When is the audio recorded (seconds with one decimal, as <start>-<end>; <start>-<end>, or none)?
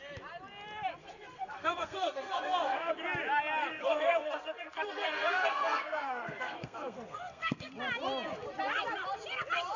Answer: 0.0-1.0; 2.9-3.7; 7.7-9.8